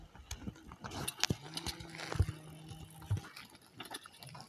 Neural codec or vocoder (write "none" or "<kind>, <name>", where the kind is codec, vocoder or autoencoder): none